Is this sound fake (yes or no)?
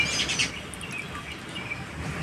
no